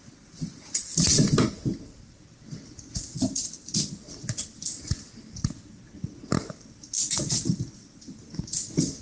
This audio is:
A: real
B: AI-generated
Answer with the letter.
A